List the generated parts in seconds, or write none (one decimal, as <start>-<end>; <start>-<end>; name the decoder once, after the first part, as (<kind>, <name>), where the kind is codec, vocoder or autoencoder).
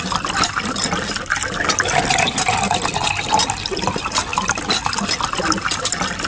none